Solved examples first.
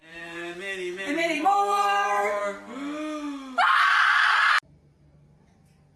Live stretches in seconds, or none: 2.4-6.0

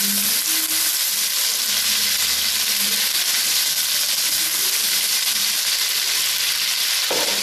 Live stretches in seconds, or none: 0.0-7.4

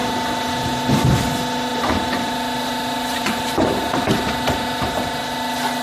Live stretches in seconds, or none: 0.0-1.7; 5.2-5.8

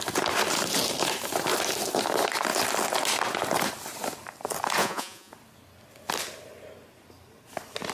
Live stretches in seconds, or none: 0.0-4.8; 5.3-7.9

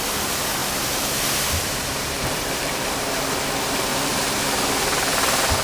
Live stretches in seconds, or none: 0.0-0.6; 3.3-3.9; 4.7-5.6

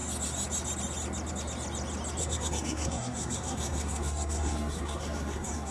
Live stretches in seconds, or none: 0.0-2.2

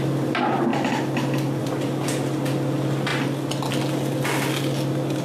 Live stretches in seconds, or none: 0.0-5.2

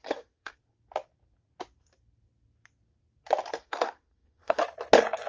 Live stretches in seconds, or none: 0.6-3.6; 4.6-5.3